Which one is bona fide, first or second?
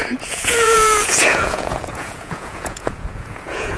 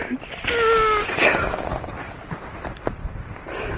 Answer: second